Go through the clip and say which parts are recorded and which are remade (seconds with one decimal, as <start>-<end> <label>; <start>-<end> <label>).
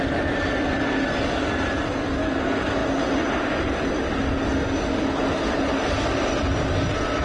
0.0-7.2 recorded